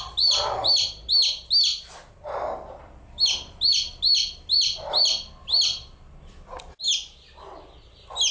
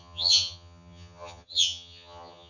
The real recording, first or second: first